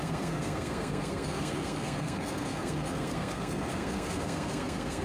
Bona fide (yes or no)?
no